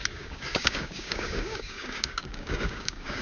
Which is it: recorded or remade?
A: remade